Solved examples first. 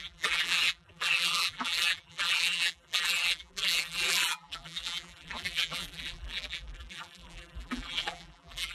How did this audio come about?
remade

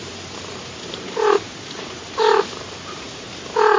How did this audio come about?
remade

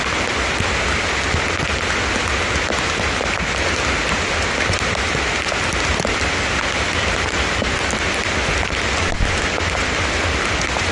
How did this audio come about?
recorded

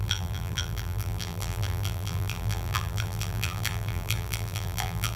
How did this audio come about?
remade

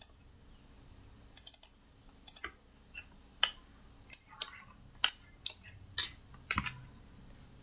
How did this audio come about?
recorded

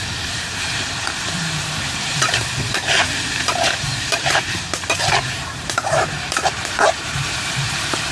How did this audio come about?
remade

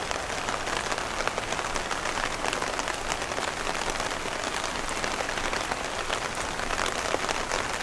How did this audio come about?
recorded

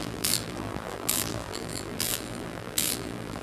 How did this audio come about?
remade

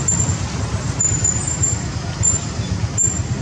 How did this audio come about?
recorded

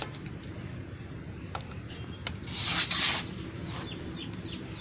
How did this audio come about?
recorded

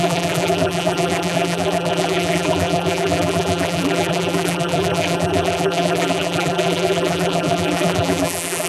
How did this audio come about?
remade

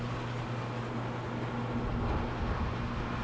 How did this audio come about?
recorded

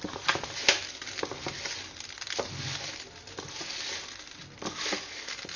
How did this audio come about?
recorded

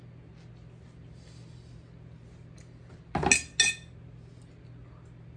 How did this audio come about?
recorded